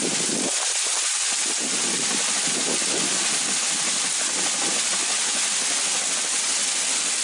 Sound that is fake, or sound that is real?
real